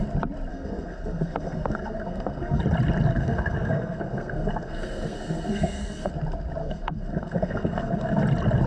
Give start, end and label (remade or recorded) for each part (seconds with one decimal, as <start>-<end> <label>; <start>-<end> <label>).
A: 0.0-0.5 recorded; 0.5-2.6 remade; 2.6-3.1 recorded; 3.1-6.1 remade; 6.1-6.6 recorded; 6.6-8.2 remade; 8.2-8.7 recorded